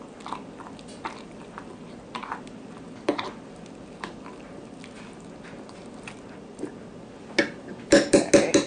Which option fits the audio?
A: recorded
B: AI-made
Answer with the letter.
A